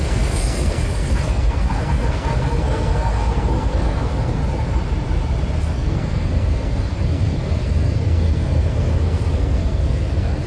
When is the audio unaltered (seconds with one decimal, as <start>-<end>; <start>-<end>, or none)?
4.4-5.6